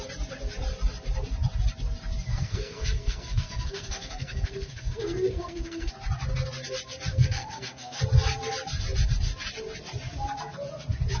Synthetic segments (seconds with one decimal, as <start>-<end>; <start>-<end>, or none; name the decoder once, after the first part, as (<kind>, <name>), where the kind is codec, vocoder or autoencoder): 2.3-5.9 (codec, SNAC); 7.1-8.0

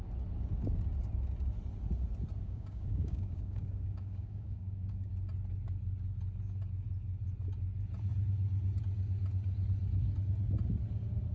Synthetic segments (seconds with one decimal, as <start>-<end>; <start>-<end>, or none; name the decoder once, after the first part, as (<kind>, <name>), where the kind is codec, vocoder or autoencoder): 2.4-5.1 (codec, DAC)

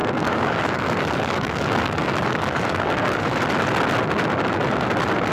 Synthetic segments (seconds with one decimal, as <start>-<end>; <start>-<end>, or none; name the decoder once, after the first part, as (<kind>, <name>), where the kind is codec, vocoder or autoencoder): 0.0-3.2 (codec, DAC)